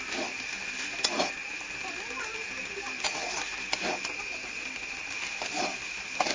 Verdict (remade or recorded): recorded